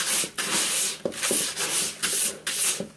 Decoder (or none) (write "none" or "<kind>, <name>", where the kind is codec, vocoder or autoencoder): none